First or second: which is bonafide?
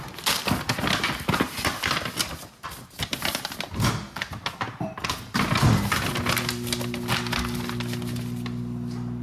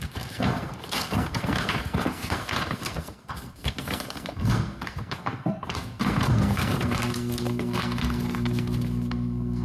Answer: first